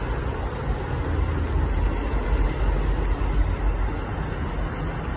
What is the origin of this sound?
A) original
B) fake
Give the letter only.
A